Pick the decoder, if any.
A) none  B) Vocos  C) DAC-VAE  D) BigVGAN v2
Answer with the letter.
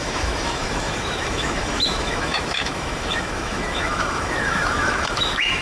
C